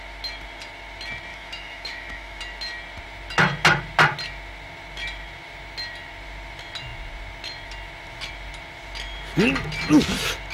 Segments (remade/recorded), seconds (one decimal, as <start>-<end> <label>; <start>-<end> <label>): 0.0-1.3 recorded; 1.3-2.4 remade; 2.4-10.5 recorded

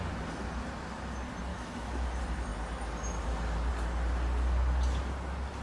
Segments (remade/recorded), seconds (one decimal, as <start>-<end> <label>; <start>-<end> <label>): 0.0-1.5 recorded; 1.5-2.1 remade; 2.1-5.6 recorded

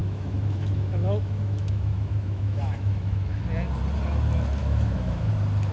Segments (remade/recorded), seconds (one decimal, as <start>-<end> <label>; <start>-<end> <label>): 0.0-3.4 remade; 3.4-4.6 recorded; 4.6-5.3 remade; 5.3-5.7 recorded